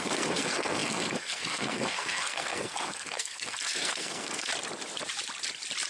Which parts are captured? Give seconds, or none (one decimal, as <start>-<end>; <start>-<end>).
4.5-5.9